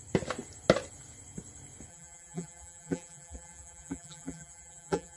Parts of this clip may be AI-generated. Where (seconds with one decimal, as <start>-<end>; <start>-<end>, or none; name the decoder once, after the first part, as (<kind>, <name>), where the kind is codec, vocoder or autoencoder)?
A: 1.9-5.2 (vocoder, BigVGAN v2)